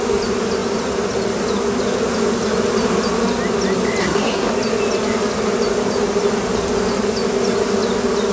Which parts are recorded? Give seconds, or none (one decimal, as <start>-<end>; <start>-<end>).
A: 0.0-4.0; 4.5-8.3